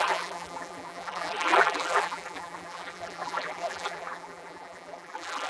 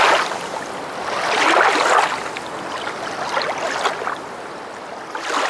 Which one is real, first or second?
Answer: second